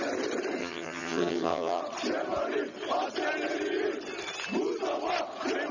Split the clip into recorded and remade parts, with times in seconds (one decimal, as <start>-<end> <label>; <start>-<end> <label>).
0.0-0.6 recorded; 0.6-1.8 remade; 1.8-5.7 recorded